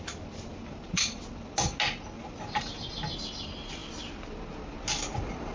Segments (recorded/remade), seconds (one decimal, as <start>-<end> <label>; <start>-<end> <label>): 0.0-5.5 recorded